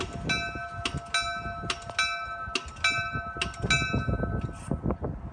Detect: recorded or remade recorded